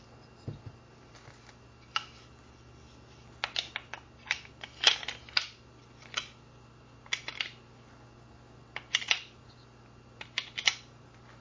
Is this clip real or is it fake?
real